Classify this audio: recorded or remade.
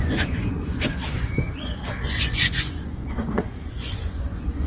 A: remade